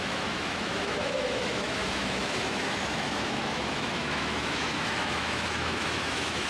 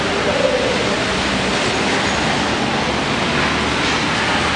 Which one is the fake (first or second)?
first